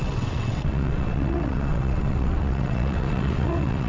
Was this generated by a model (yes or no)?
yes